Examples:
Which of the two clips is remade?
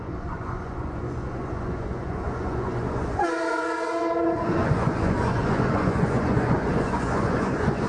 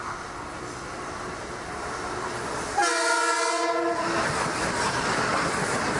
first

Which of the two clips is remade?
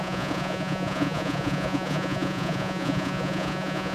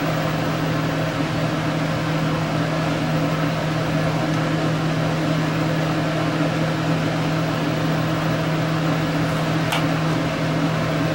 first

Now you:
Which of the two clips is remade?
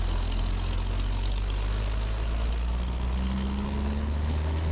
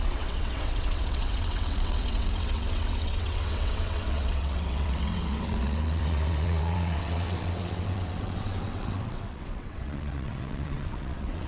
second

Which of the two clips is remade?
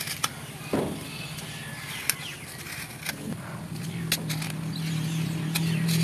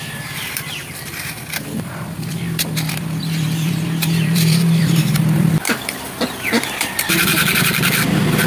second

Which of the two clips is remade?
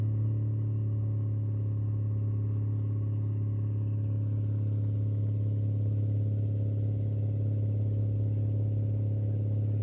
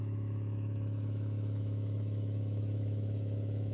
second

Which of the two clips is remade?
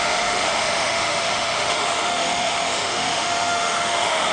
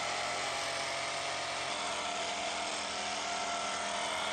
first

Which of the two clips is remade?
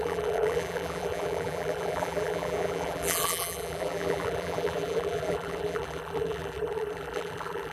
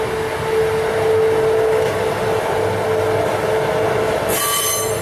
first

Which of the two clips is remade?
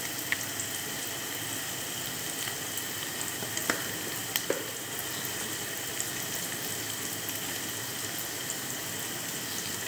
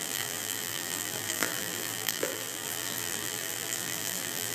second